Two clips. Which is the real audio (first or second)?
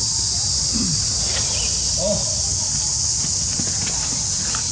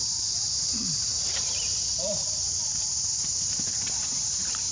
first